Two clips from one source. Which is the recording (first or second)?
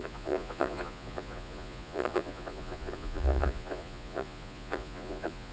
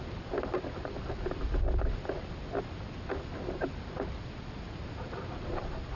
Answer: second